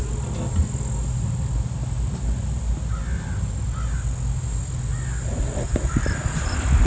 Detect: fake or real real